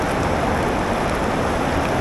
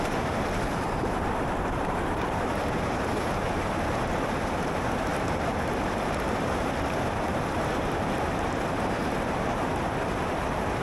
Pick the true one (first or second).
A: first